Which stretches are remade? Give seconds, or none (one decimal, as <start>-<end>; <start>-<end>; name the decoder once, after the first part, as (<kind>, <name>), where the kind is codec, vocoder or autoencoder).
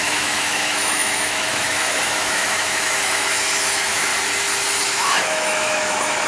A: 0.0-4.1 (autoencoder, DAC-VAE); 4.8-6.3